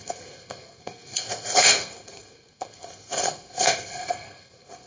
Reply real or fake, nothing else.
fake